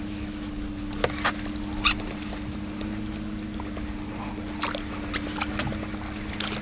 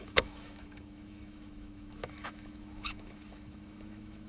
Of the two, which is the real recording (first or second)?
first